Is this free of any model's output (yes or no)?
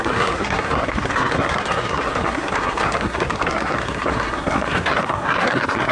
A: no